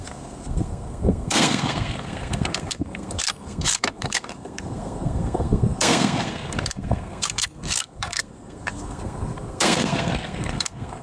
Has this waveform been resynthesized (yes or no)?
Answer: yes